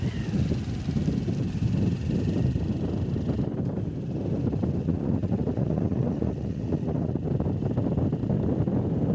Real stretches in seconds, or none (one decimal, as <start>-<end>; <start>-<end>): 0.0-4.8; 7.2-9.1